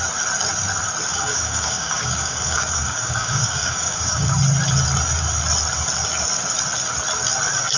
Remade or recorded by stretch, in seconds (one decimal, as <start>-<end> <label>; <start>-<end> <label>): 0.0-1.1 recorded; 1.1-4.3 remade; 4.3-7.8 recorded